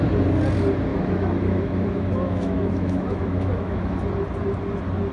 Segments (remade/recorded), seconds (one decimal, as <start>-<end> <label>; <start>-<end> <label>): 0.0-0.9 recorded; 0.9-4.0 remade; 4.0-5.1 recorded